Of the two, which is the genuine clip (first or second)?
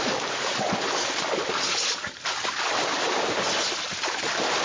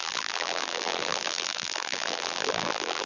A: first